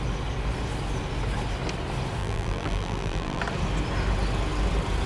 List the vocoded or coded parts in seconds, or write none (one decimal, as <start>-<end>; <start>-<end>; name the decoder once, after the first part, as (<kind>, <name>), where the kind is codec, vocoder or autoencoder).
2.2-3.4 (vocoder, BigVGAN v2)